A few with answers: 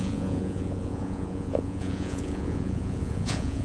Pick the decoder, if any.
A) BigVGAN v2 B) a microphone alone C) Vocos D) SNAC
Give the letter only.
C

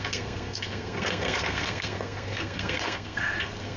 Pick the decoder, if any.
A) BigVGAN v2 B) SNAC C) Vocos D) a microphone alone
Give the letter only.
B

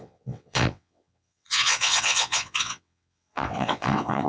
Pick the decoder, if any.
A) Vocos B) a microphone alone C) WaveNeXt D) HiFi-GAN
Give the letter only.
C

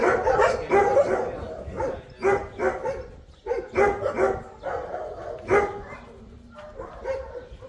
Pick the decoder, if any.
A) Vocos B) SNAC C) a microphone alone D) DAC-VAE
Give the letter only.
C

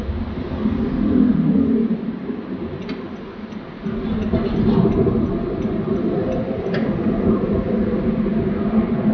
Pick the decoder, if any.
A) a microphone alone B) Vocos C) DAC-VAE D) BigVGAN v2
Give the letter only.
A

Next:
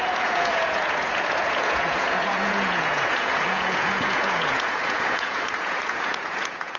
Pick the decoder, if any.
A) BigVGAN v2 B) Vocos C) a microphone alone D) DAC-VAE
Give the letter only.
B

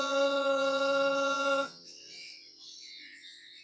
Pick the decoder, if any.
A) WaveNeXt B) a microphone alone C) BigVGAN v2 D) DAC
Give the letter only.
A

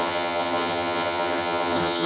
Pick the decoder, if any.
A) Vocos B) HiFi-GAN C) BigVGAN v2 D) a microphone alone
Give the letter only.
B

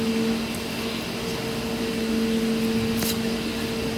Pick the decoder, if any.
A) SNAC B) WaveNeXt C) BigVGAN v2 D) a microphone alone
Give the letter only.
D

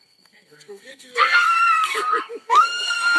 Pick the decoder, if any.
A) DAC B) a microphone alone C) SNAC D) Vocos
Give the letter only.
C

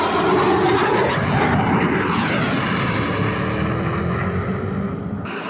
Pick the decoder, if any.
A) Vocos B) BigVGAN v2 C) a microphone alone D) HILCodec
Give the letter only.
C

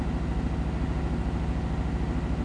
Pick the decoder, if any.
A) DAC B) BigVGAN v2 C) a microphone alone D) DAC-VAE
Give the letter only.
C